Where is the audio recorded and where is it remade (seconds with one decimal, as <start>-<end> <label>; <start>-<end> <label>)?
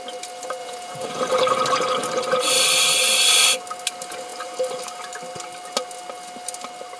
0.0-0.6 recorded; 0.6-1.2 remade; 1.2-7.0 recorded